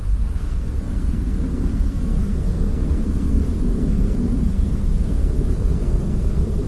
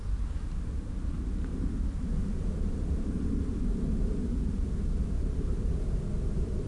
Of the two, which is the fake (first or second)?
first